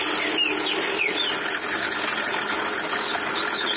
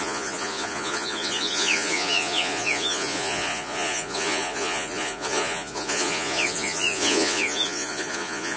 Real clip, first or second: first